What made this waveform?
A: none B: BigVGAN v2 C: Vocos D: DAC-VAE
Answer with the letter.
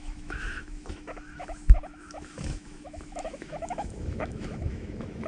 D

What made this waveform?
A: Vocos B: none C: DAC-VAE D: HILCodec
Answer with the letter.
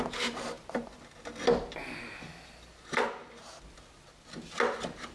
B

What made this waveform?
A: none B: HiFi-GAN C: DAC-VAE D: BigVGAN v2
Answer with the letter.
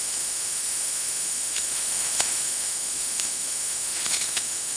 C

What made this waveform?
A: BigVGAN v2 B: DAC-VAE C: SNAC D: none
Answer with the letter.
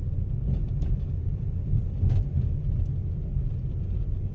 D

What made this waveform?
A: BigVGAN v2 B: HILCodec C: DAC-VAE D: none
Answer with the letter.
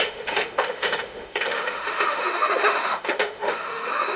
C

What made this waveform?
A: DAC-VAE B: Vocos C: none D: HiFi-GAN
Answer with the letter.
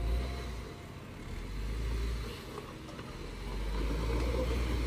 C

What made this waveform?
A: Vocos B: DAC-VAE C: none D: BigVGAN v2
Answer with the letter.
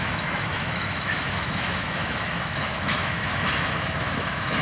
B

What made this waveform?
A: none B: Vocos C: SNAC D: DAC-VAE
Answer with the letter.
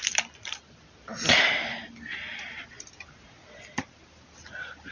A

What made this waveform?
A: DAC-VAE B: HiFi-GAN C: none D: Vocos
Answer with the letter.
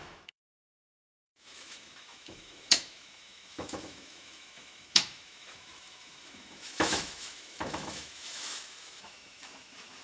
A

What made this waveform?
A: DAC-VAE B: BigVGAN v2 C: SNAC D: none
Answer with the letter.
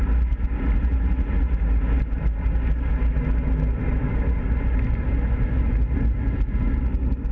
D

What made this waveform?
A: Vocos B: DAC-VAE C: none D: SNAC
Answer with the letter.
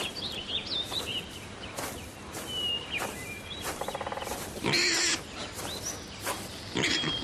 C